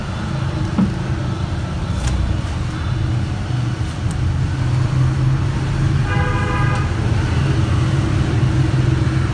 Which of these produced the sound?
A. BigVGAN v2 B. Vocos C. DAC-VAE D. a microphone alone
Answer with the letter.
D